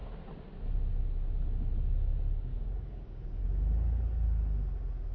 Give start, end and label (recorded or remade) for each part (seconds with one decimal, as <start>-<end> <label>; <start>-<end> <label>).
0.0-2.5 recorded; 2.5-3.4 remade; 3.4-5.1 recorded